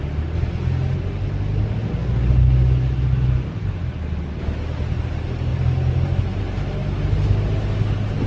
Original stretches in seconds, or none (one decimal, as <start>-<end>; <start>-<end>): 0.0-5.5; 6.4-8.3